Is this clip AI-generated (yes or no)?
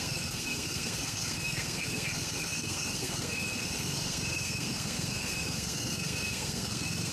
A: yes